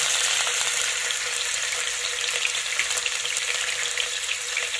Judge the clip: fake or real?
fake